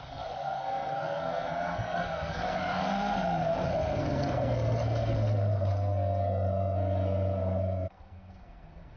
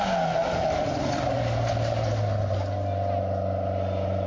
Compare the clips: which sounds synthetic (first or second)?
first